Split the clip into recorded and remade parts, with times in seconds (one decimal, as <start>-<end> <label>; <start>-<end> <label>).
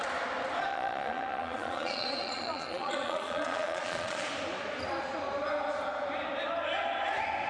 0.0-0.7 recorded; 0.7-4.3 remade; 4.3-7.5 recorded